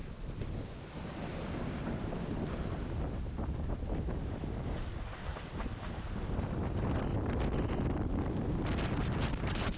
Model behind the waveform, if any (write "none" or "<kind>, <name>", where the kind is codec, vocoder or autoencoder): none